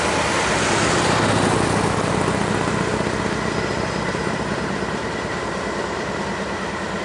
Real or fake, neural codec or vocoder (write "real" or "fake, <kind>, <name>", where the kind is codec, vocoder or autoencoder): real